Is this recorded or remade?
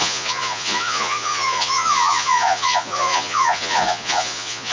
remade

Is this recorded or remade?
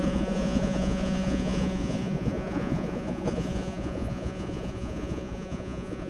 remade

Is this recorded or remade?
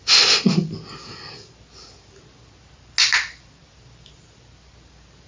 recorded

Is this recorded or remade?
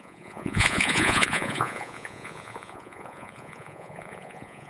remade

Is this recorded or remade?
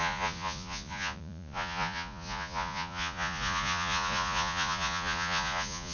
remade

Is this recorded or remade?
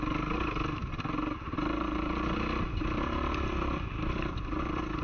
recorded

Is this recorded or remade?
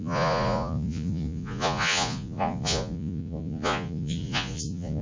remade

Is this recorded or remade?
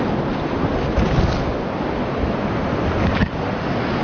recorded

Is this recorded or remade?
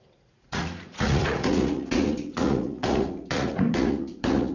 remade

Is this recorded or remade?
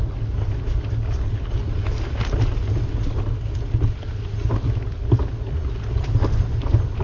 recorded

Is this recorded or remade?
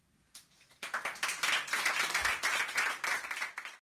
recorded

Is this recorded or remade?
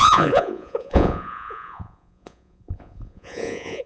remade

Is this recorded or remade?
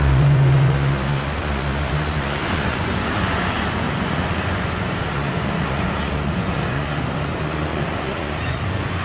remade